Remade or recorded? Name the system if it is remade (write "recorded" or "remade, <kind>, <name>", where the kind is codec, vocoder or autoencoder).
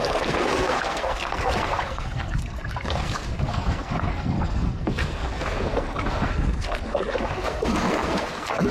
remade, codec, SNAC